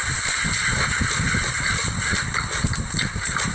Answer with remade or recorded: recorded